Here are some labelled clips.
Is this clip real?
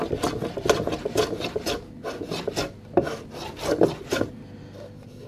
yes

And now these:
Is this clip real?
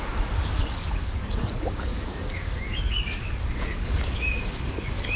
no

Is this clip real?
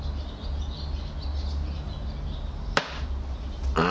yes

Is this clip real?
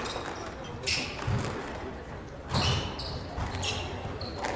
yes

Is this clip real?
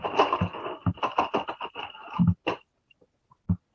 yes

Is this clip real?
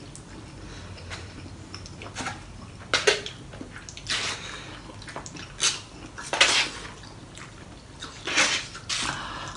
yes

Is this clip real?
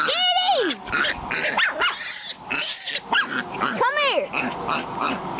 yes